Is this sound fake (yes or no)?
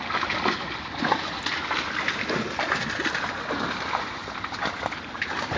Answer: no